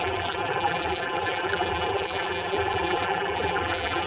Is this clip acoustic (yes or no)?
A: no